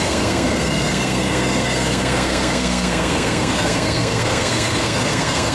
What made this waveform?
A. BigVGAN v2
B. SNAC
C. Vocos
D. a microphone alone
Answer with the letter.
B